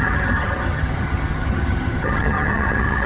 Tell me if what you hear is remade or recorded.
remade